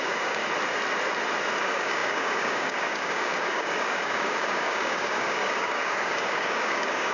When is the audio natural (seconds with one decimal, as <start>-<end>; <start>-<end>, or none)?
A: 0.4-1.6